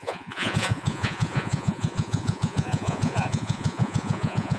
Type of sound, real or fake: fake